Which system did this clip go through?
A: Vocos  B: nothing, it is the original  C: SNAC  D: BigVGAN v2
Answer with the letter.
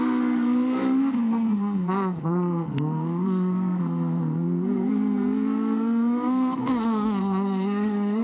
C